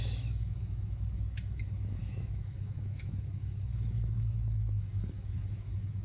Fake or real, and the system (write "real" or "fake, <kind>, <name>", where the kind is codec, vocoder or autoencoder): fake, autoencoder, DAC-VAE